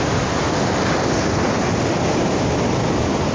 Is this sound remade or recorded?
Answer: recorded